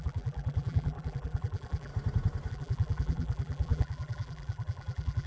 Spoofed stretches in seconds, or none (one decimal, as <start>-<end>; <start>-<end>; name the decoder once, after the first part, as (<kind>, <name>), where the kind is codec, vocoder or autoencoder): 0.0-1.9 (vocoder, BigVGAN v2); 2.5-5.3